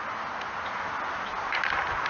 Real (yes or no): yes